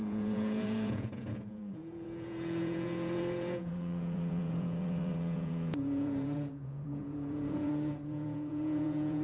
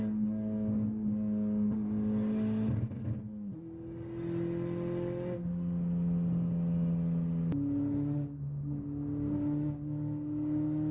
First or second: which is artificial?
first